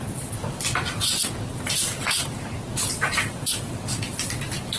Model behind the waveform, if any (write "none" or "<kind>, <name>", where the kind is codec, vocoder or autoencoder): none